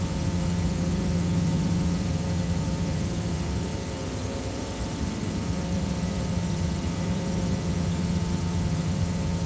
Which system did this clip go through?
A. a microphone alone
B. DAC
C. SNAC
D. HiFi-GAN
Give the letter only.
D